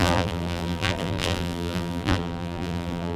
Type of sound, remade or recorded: remade